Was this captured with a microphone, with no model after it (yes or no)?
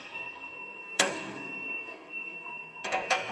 no